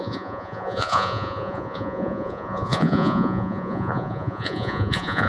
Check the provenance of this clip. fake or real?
fake